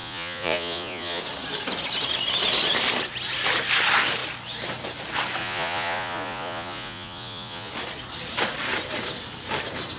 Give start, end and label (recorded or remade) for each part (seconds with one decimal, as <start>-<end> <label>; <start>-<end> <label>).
0.0-1.2 remade; 1.2-5.4 recorded; 5.4-7.7 remade; 7.7-10.0 recorded